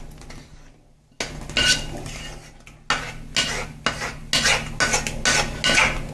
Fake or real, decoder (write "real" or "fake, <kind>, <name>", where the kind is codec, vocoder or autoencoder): real